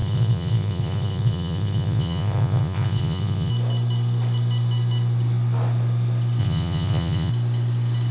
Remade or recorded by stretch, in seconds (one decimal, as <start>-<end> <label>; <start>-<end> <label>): 0.0-3.5 remade; 3.5-6.4 recorded; 6.4-7.3 remade; 7.3-8.1 recorded